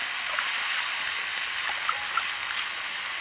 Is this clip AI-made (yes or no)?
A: no